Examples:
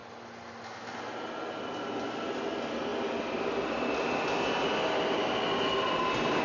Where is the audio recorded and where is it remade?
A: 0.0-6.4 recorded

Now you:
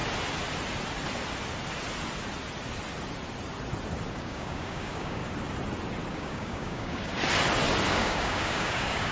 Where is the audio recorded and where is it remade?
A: 0.0-4.1 recorded; 4.1-5.2 remade; 5.2-6.1 recorded; 6.1-7.1 remade; 7.1-7.9 recorded; 7.9-9.1 remade

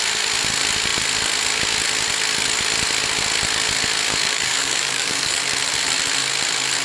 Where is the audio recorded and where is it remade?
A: 0.0-4.2 recorded; 4.2-5.4 remade; 5.4-6.8 recorded

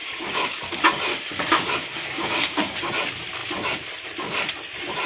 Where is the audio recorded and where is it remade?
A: 0.0-0.6 remade; 0.6-1.1 recorded; 1.1-2.9 remade; 2.9-5.1 recorded

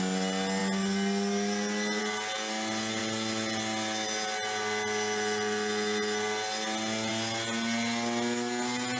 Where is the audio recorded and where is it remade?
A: 0.0-9.0 recorded

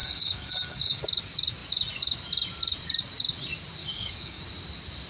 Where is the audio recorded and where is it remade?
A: 0.0-1.0 remade; 1.0-3.8 recorded; 3.8-4.4 remade; 4.4-5.1 recorded

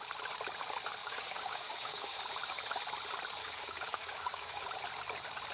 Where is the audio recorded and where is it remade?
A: 0.0-1.0 recorded; 1.0-2.2 remade; 2.2-3.4 recorded; 3.4-4.7 remade; 4.7-5.5 recorded